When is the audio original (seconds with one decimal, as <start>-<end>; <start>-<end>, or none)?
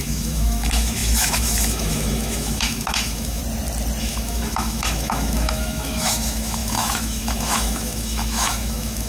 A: 3.4-4.0